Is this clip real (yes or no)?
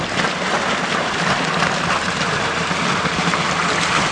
yes